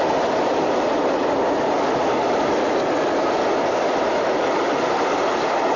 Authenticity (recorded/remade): recorded